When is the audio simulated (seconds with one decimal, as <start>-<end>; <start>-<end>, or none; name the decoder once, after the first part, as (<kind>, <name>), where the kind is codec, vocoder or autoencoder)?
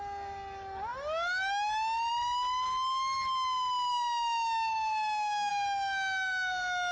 3.9-5.5 (codec, DAC)